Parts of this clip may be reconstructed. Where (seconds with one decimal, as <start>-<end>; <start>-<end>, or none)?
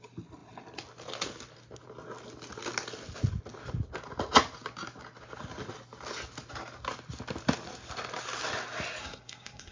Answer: 9.0-9.7